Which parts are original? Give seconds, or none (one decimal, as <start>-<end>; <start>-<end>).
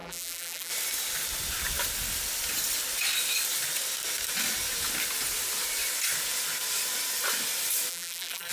0.7-7.9